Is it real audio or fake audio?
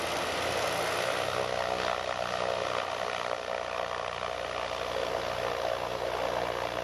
real